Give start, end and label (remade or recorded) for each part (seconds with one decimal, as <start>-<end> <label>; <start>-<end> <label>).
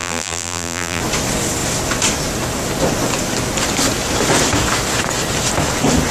0.0-1.0 remade; 1.0-6.1 recorded